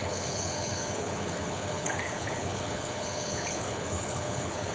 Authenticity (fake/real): fake